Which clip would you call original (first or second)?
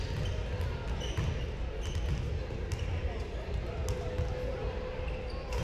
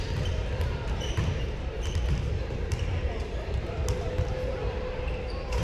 first